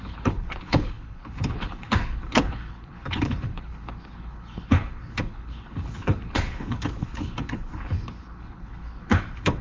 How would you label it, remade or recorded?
remade